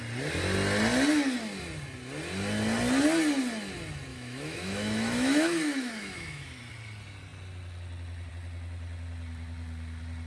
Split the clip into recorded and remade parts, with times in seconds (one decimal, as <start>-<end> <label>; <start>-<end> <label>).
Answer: 0.0-4.1 recorded; 4.1-6.6 remade; 6.6-10.3 recorded